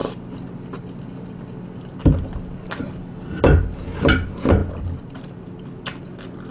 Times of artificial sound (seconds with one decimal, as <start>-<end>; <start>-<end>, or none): none